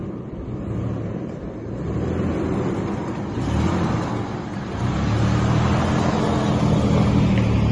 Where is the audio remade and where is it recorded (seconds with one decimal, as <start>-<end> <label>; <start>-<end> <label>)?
0.0-7.7 recorded